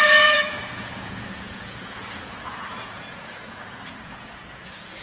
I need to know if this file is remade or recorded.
remade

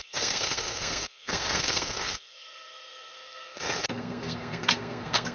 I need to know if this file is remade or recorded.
remade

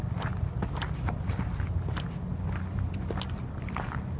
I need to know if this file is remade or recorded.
recorded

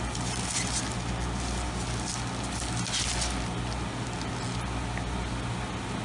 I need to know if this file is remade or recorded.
recorded